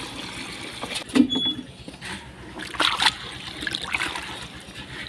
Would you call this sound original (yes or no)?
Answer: yes